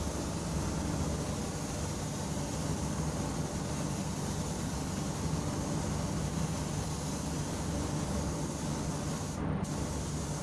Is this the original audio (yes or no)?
yes